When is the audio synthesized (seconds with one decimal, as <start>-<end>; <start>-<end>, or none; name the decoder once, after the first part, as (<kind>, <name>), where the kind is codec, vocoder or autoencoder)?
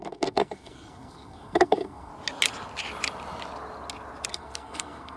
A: 0.0-2.1 (codec, SNAC); 4.3-5.2